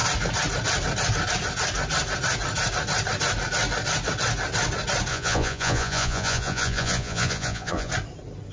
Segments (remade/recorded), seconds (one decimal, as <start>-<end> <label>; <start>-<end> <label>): 0.0-5.1 recorded; 5.1-7.9 remade; 7.9-8.5 recorded